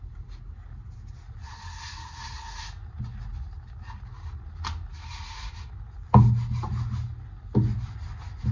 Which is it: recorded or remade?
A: recorded